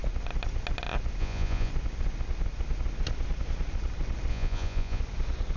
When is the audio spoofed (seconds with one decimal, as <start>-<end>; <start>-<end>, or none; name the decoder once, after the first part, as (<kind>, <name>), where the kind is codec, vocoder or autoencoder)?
1.2-1.7 (vocoder, Vocos); 4.3-5.0